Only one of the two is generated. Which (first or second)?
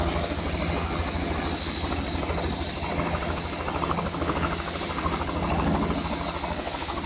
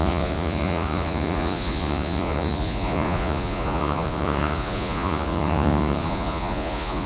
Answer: second